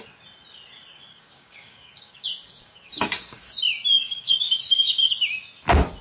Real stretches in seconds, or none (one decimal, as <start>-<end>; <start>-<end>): 0.0-1.1; 3.6-4.0; 5.2-6.0